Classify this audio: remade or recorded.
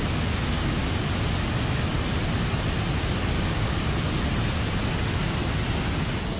recorded